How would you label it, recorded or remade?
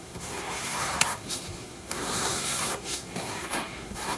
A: remade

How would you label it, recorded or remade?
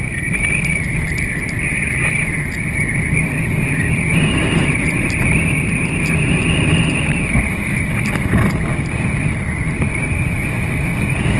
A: recorded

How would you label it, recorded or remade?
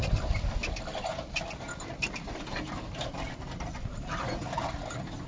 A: recorded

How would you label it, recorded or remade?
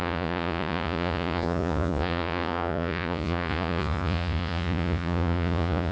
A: remade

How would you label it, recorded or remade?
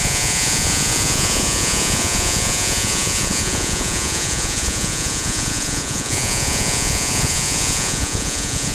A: remade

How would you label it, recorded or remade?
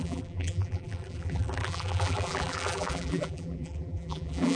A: remade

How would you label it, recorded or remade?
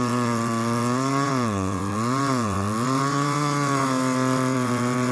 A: remade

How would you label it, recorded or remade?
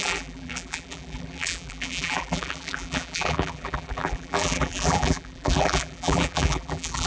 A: remade